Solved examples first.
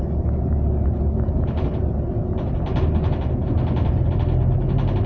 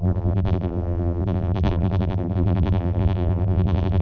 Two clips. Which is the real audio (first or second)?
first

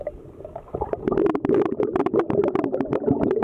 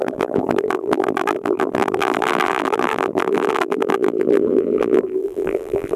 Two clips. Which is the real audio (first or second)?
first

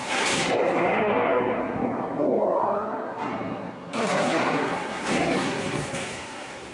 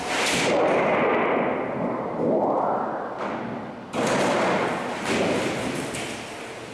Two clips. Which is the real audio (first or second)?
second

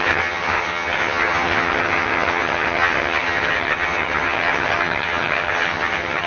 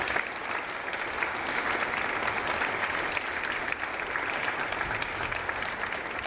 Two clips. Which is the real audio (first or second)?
second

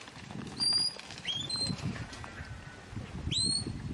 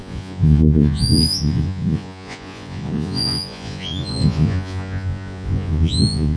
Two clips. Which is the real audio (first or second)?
first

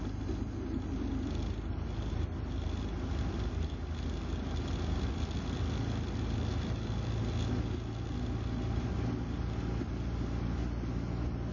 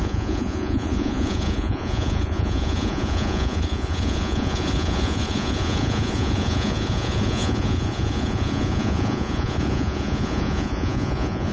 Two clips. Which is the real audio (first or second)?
first